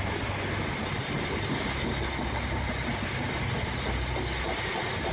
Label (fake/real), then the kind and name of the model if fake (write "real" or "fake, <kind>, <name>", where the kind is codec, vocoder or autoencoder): real